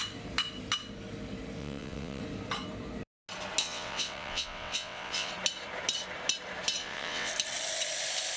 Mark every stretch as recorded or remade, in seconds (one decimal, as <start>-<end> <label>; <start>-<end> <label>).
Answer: 0.0-1.6 recorded; 1.6-2.2 remade; 2.2-3.6 recorded; 3.6-5.3 remade; 5.3-6.8 recorded; 6.8-7.3 remade; 7.3-8.4 recorded